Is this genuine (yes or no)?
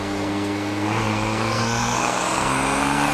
no